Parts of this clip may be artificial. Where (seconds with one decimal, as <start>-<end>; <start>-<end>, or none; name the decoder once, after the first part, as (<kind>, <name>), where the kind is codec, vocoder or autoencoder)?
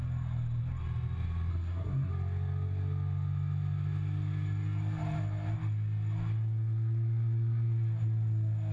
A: 1.5-2.1 (codec, SNAC)